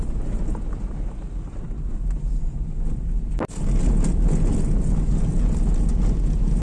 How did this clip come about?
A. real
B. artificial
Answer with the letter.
A